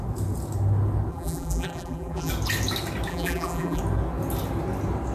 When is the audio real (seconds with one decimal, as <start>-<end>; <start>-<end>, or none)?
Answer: 0.0-1.1; 2.3-3.1; 3.8-5.1